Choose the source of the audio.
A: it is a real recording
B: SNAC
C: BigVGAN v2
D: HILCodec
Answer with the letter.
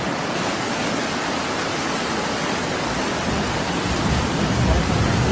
A